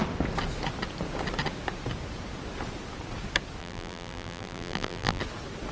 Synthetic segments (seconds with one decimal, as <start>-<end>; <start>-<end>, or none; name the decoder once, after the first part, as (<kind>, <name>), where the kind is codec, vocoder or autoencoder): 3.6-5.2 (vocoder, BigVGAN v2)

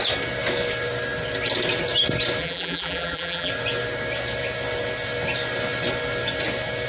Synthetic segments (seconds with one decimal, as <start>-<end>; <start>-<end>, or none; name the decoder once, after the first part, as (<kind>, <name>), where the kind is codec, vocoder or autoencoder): 2.4-3.5 (vocoder, BigVGAN v2)

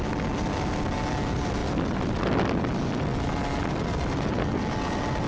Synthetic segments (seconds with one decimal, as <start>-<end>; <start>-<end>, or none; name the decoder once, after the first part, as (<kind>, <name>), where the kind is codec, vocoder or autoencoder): none